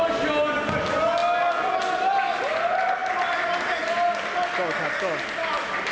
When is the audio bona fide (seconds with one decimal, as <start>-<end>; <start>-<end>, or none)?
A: 0.0-5.9